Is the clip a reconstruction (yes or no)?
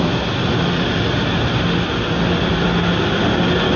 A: no